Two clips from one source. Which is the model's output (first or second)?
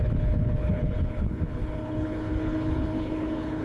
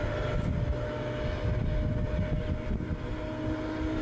first